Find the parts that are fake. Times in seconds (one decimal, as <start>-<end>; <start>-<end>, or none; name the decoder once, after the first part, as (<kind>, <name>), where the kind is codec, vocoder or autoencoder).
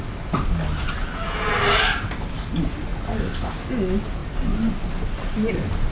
none